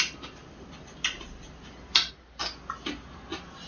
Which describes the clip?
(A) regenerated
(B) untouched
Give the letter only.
B